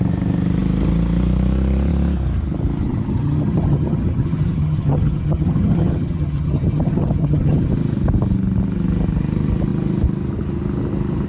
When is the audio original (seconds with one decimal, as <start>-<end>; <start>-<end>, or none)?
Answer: 0.0-2.8; 7.7-11.3